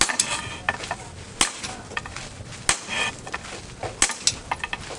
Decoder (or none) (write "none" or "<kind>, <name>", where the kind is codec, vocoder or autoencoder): none